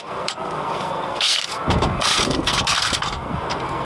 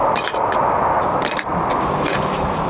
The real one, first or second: second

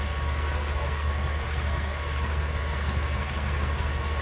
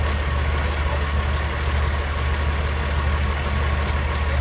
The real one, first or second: second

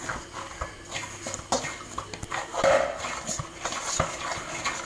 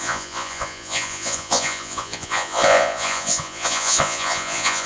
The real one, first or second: first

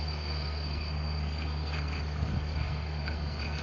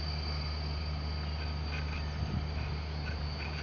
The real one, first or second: second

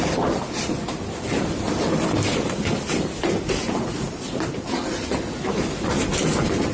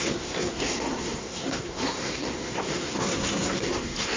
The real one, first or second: first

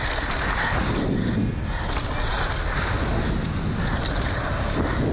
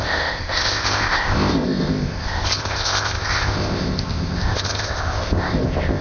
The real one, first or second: first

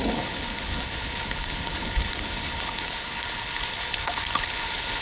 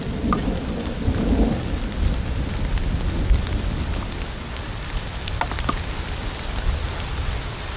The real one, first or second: second